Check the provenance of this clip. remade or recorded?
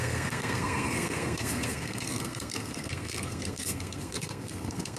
remade